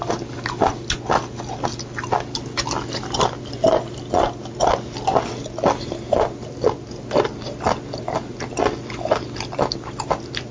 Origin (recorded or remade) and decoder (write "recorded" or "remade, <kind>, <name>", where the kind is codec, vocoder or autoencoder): recorded